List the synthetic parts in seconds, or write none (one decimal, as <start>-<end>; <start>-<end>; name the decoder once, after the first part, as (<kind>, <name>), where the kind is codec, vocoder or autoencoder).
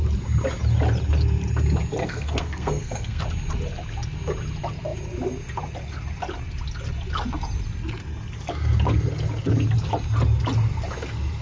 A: 2.0-3.2 (codec, SNAC)